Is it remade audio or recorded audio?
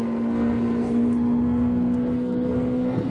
remade